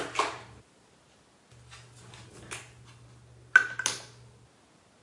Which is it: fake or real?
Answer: real